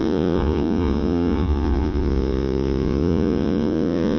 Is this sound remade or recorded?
remade